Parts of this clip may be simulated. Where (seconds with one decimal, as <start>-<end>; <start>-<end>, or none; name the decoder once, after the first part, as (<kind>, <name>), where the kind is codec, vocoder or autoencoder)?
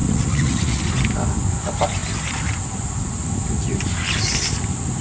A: 0.0-0.8 (vocoder, Vocos)